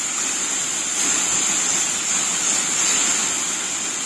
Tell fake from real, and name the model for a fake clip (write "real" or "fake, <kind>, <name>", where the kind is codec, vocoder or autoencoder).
real